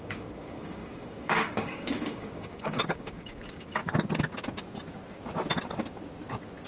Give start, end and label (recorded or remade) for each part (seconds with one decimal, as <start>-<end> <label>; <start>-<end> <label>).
0.0-3.8 remade; 3.8-6.7 recorded